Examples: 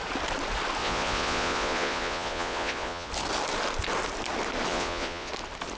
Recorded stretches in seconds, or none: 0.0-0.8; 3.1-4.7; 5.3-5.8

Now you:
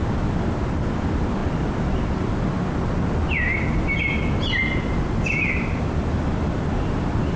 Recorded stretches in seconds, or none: 0.0-7.4

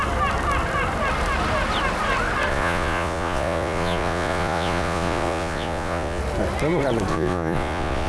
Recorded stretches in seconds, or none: 0.0-2.5; 6.2-7.1

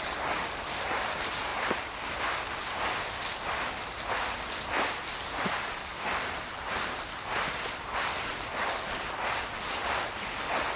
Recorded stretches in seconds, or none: 0.0-10.8

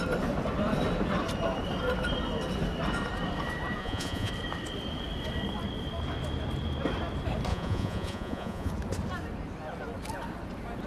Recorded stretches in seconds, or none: 0.0-3.8; 4.3-7.5; 8.7-10.9